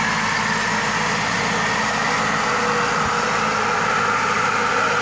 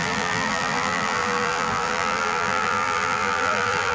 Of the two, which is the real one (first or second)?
first